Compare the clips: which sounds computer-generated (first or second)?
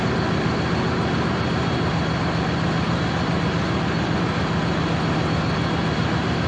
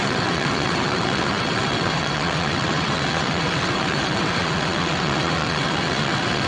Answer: second